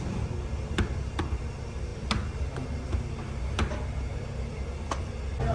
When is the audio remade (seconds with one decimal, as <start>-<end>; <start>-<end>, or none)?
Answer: none